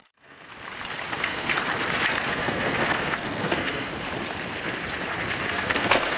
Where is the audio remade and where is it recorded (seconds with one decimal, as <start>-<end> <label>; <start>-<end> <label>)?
0.0-0.5 remade; 0.5-1.1 recorded; 1.1-1.6 remade; 1.6-2.3 recorded; 2.3-3.9 remade; 3.9-5.5 recorded; 5.5-6.2 remade